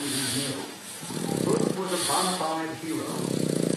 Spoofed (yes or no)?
yes